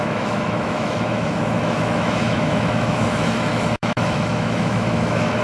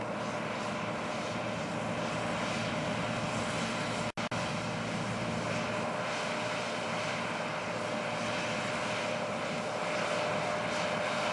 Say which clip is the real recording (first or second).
second